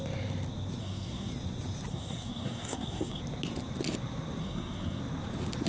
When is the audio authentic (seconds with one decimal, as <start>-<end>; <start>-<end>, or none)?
0.0-0.8; 1.3-1.9; 3.2-4.4; 5.0-5.7